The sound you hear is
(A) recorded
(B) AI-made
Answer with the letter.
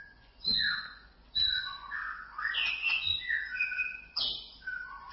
B